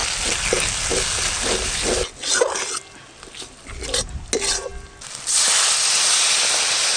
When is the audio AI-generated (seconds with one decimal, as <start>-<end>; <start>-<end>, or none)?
none